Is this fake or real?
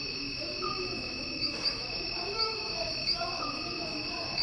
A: fake